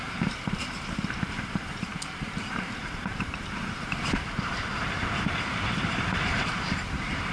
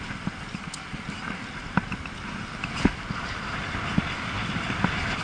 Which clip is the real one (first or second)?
second